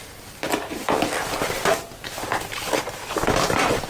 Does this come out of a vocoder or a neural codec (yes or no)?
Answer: no